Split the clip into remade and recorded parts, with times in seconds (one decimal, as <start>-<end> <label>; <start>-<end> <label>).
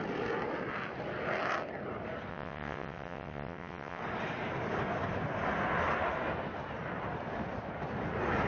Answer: 0.0-2.3 recorded; 2.3-4.0 remade; 4.0-8.5 recorded